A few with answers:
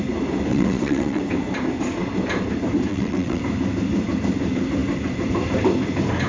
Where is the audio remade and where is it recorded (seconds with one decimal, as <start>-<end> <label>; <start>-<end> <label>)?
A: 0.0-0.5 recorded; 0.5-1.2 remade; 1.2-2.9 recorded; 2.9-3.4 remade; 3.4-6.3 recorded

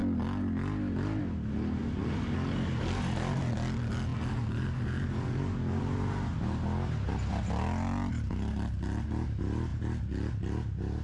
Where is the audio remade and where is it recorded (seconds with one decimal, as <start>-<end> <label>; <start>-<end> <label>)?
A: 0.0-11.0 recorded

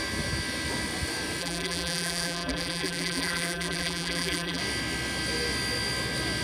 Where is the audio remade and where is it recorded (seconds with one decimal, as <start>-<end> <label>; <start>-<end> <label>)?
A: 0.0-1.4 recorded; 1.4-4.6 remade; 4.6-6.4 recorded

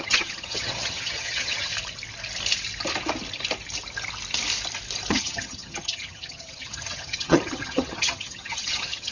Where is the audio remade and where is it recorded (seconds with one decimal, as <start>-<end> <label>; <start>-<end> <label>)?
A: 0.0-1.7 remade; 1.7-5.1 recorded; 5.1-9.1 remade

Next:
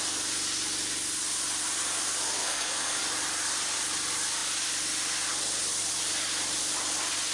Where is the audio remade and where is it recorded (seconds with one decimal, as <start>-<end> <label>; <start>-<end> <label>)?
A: 0.0-2.4 recorded; 2.4-3.0 remade; 3.0-7.3 recorded

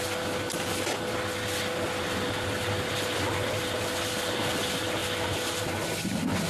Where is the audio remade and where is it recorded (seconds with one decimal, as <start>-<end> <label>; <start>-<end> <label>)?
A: 0.0-6.5 recorded

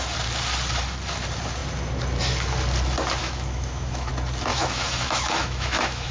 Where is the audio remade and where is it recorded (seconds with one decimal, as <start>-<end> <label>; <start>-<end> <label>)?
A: 0.0-3.2 recorded; 3.2-4.1 remade; 4.1-4.5 recorded; 4.5-6.1 remade

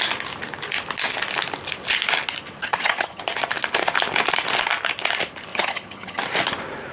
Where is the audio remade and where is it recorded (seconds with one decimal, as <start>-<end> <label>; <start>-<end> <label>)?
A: 0.0-2.6 recorded; 2.6-3.2 remade; 3.2-5.5 recorded; 5.5-6.2 remade; 6.2-6.9 recorded